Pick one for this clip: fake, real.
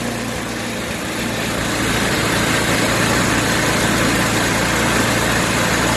real